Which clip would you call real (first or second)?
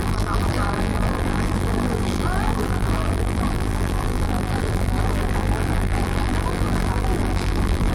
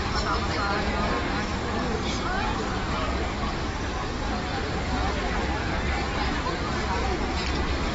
second